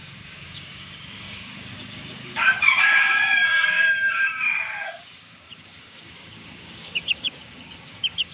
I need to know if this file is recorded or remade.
remade